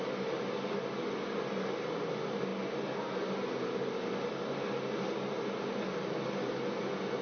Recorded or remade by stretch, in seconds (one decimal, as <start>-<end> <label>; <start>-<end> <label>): 0.0-7.2 recorded